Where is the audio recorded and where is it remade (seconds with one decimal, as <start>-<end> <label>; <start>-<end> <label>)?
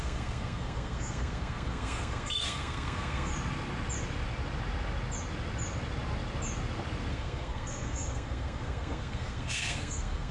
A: 0.0-3.3 remade; 3.3-7.1 recorded; 7.1-10.3 remade